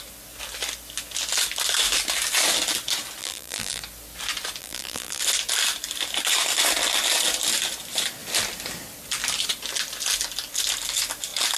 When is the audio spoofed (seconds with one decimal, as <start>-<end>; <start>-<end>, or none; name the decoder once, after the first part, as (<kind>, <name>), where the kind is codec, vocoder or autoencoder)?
3.2-3.8 (vocoder, BigVGAN v2); 4.6-5.2